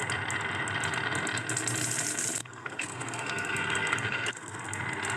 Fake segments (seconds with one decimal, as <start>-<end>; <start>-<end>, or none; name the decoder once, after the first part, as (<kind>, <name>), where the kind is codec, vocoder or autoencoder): 2.4-4.6 (codec, SNAC)